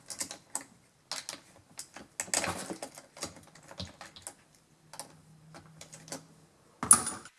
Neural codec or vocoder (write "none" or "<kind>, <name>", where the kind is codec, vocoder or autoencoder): none